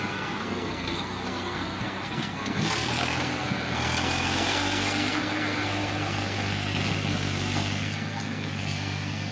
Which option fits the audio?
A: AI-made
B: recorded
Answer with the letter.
A